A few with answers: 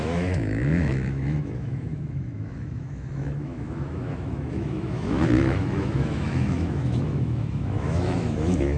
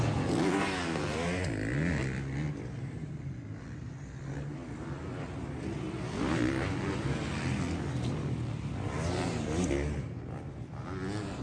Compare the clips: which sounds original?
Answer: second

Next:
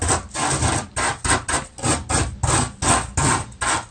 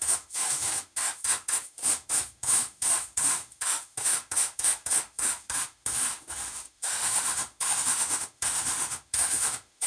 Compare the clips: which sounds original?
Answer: first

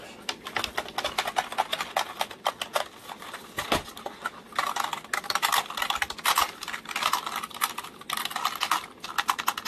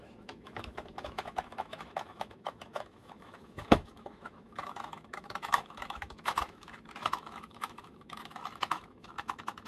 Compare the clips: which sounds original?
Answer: first